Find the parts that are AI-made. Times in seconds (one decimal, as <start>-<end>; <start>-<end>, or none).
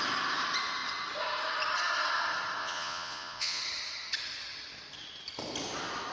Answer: 2.6-3.6